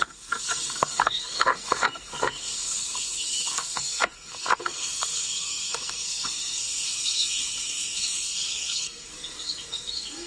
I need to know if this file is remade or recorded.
remade